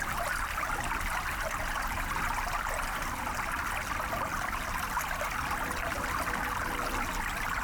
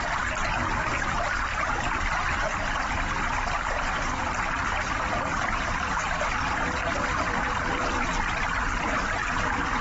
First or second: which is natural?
first